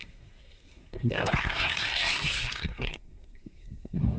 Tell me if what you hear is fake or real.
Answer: fake